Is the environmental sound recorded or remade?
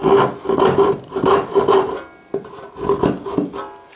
recorded